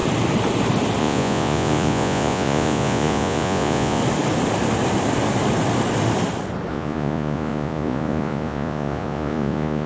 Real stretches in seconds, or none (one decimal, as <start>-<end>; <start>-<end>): 0.0-1.0; 4.0-6.7